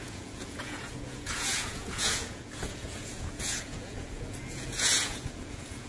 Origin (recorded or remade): remade